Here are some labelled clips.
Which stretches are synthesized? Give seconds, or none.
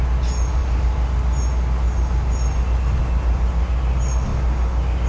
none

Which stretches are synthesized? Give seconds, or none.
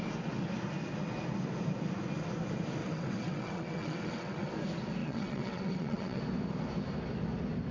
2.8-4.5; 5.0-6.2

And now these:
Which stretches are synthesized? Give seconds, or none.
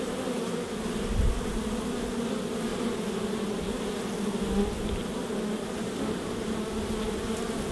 none